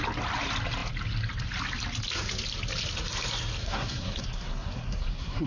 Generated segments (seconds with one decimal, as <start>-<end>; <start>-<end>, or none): 3.6-5.5